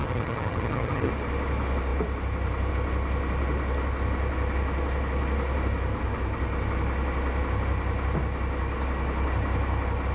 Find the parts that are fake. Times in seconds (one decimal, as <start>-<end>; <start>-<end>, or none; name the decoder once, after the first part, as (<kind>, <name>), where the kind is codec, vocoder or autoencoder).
0.0-1.1 (vocoder, HiFi-GAN)